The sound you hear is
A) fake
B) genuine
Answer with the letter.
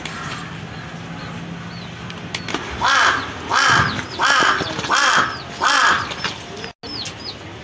B